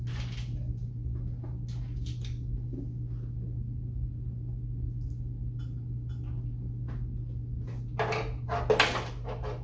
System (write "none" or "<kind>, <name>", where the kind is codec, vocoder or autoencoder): none